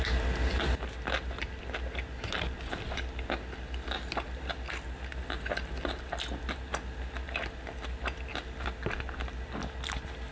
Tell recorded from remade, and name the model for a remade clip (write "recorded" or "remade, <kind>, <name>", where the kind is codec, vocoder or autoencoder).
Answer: recorded